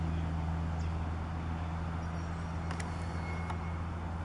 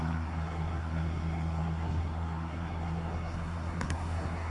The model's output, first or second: second